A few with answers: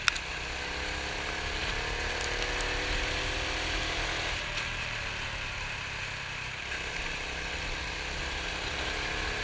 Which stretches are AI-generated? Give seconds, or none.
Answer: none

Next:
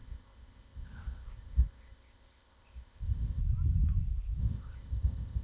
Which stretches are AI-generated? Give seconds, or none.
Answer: 0.0-3.4; 4.4-5.4